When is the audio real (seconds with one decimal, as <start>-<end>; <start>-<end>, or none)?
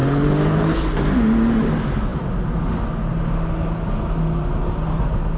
1.0-5.4